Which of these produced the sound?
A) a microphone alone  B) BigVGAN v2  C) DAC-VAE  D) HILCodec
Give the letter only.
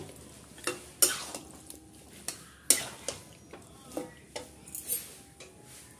A